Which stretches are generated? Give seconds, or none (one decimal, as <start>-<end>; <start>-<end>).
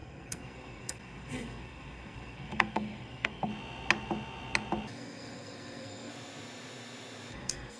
0.0-3.5; 4.9-6.1; 7.3-7.8